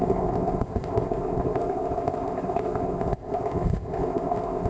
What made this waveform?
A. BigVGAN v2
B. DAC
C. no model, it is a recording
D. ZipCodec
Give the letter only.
D